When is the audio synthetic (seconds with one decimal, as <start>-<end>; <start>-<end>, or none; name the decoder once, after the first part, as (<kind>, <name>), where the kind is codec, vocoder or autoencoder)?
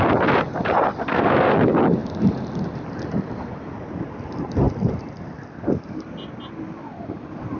1.0-1.5 (codec, SNAC)